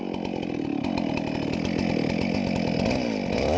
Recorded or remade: recorded